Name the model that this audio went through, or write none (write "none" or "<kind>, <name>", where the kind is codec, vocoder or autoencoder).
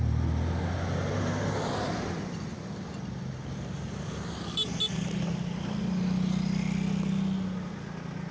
none